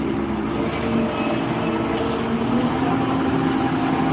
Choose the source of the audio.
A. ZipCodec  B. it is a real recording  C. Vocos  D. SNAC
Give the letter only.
B